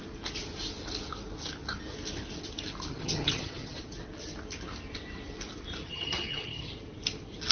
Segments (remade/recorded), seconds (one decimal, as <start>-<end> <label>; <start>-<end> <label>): 0.0-2.9 recorded; 2.9-3.8 remade; 3.8-5.8 recorded; 5.8-6.7 remade; 6.7-7.5 recorded